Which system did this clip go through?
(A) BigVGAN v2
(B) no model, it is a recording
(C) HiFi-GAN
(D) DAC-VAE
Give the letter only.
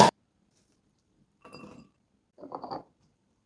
A